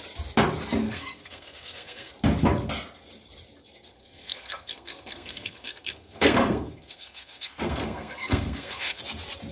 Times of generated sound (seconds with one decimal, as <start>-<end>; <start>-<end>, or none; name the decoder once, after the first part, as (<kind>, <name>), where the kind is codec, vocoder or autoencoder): 0.8-2.1 (codec, SNAC); 4.0-9.0